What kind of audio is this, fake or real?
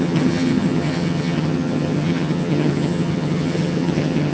fake